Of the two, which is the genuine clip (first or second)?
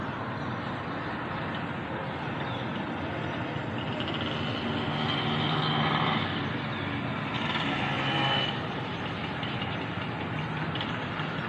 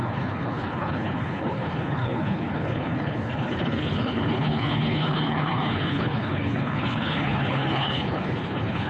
first